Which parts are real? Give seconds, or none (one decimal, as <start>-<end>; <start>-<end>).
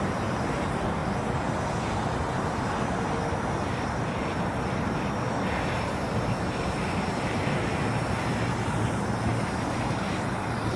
1.0-5.7